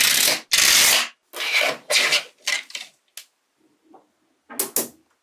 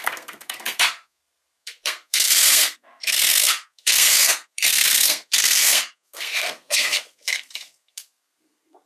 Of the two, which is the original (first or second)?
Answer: first